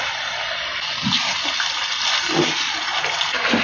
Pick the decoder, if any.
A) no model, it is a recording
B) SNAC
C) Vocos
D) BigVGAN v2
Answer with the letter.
A